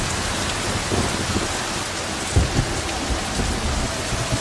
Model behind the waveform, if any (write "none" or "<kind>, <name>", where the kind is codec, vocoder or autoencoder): none